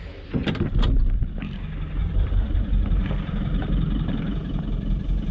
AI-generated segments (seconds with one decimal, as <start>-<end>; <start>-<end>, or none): 2.0-5.3